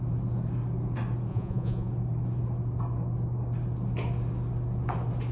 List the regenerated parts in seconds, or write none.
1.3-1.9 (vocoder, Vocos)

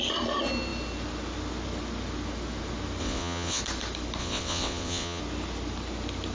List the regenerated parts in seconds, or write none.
3.0-3.6 (vocoder, WaveNeXt); 4.2-5.2

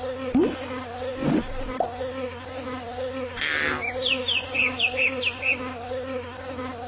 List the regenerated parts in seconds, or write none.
0.0-6.9 (vocoder, BigVGAN v2)